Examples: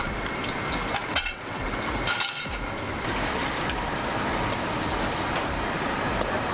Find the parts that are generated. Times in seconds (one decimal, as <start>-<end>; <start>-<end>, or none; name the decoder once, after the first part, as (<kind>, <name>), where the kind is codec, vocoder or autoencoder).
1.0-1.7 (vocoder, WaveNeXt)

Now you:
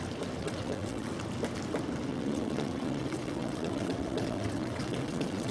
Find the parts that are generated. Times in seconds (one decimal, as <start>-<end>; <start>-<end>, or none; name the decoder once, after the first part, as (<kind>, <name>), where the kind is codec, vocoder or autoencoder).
0.4-1.1 (vocoder, WaveNeXt); 2.1-5.5

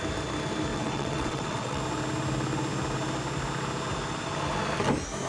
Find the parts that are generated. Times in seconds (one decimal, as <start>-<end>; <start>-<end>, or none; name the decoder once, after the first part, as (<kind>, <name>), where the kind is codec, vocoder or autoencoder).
0.7-1.8 (vocoder, WaveNeXt)

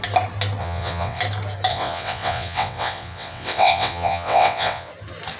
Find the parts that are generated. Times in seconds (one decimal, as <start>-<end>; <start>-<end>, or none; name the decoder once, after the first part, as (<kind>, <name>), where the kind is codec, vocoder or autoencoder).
0.6-1.2 (vocoder, WaveNeXt); 1.7-4.9